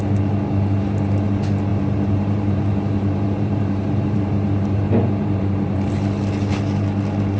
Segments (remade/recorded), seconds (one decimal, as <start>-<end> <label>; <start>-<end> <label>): 0.0-1.7 recorded; 1.7-5.9 remade; 5.9-7.4 recorded